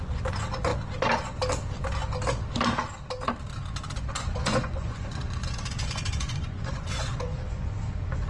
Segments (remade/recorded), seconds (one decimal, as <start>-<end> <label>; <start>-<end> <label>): 0.0-0.7 remade; 0.7-4.2 recorded; 4.2-8.3 remade